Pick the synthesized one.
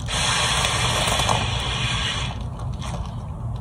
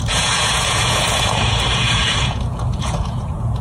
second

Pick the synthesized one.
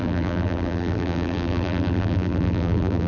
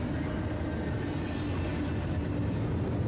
first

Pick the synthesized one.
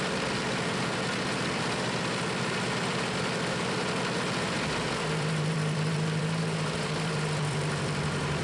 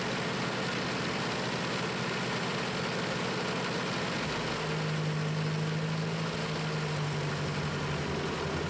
first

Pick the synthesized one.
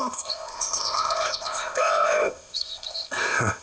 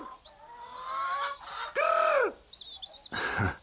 first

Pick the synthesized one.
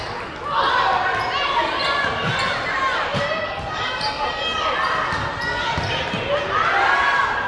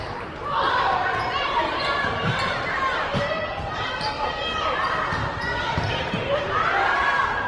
second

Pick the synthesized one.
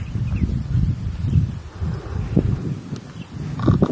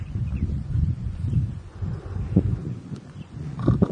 second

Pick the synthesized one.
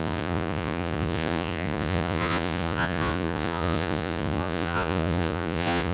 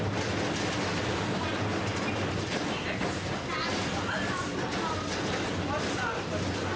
first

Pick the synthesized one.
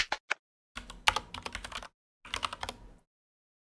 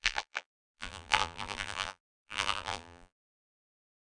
second